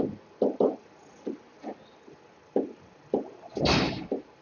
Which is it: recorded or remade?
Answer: recorded